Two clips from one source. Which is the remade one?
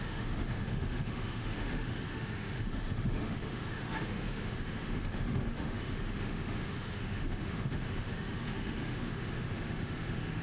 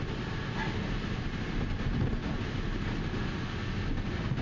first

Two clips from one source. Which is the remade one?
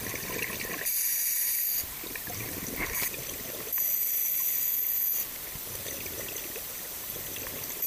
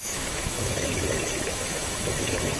second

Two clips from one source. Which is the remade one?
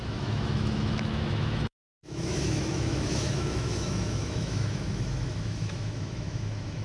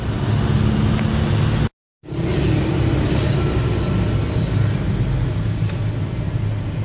first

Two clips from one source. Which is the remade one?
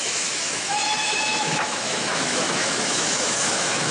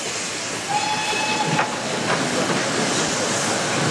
first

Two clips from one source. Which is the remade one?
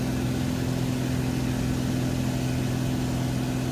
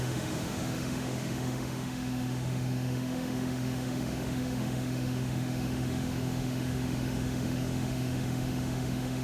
second